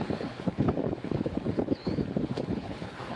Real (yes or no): no